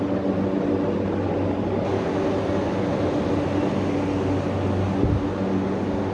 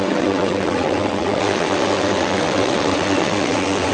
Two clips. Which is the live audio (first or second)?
first